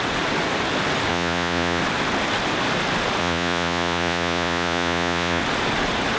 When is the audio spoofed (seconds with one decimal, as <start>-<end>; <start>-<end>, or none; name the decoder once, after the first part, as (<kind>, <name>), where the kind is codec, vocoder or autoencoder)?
1.1-1.8 (vocoder, Vocos); 3.2-5.4